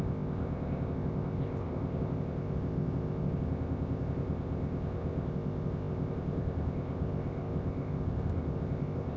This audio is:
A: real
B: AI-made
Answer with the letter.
B